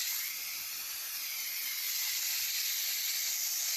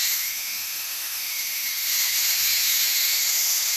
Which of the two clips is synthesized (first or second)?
second